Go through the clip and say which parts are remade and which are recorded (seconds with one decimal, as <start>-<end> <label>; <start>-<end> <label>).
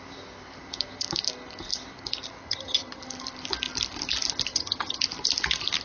0.0-2.4 recorded; 2.4-3.0 remade; 3.0-4.5 recorded; 4.5-5.0 remade; 5.0-5.8 recorded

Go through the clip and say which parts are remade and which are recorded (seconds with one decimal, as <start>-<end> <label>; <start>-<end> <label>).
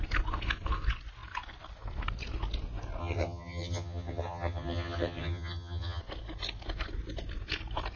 0.0-3.0 recorded; 3.0-6.0 remade; 6.0-8.0 recorded